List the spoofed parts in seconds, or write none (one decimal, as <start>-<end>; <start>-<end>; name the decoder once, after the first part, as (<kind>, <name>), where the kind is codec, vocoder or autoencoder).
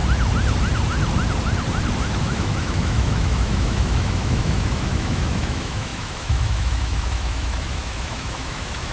2.2-8.9 (autoencoder, DAC-VAE)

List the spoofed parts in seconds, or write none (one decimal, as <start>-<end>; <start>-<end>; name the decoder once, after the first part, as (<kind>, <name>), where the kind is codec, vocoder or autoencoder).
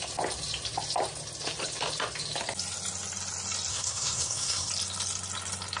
3.7-4.7 (codec, SNAC)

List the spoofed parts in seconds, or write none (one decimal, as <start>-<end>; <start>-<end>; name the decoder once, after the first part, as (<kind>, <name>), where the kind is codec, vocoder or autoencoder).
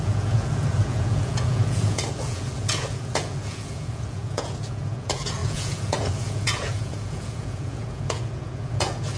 0.0-9.2 (vocoder, Vocos)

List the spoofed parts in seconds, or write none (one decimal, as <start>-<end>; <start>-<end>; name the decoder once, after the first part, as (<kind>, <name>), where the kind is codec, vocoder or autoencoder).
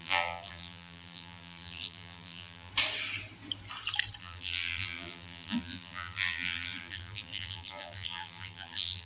0.0-2.7 (vocoder, BigVGAN v2); 4.2-9.1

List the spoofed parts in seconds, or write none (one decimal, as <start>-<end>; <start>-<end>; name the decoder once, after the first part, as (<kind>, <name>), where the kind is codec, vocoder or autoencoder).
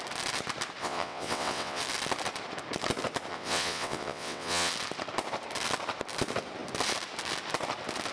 0.8-1.8 (vocoder, WaveNeXt); 3.3-4.7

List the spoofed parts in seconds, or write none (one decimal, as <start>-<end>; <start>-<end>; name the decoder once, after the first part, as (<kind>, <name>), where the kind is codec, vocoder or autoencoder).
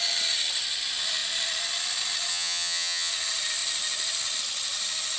2.3-3.1 (vocoder, HiFi-GAN)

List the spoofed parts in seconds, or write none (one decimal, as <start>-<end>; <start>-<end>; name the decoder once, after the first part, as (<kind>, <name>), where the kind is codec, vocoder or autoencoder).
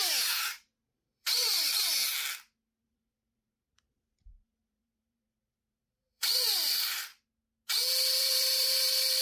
0.0-2.0 (vocoder, BigVGAN v2); 2.8-7.1; 8.2-9.2